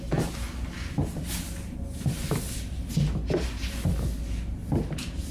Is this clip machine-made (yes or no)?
no